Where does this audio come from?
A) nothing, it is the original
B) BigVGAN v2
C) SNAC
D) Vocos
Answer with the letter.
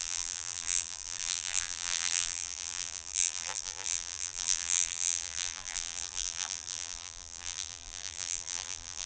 B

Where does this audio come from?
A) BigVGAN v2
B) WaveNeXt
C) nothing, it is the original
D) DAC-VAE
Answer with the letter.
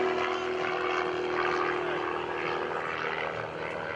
C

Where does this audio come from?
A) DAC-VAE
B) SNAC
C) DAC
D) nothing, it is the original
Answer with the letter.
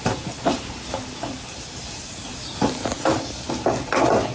D